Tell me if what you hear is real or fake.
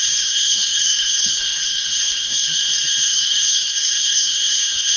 fake